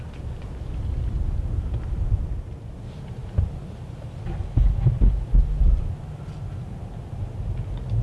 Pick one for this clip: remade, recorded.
recorded